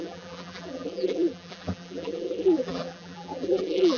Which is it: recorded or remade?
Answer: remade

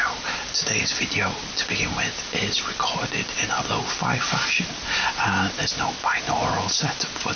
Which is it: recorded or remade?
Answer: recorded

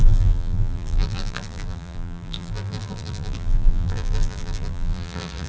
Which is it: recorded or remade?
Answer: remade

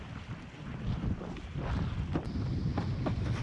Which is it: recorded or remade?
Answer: recorded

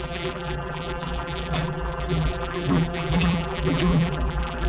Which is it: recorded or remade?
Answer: remade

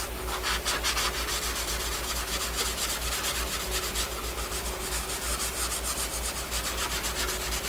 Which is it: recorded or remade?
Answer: recorded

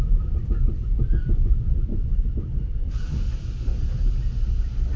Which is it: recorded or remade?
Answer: remade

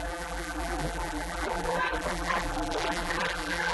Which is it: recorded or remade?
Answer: remade